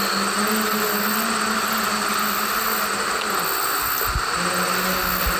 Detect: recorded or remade recorded